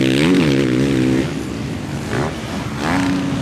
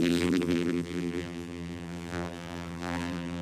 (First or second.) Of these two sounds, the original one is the first